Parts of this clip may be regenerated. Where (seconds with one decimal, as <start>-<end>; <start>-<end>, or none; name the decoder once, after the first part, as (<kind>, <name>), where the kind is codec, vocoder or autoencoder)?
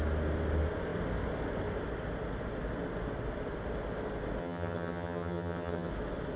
4.4-5.9 (vocoder, HiFi-GAN)